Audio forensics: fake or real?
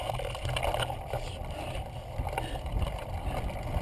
real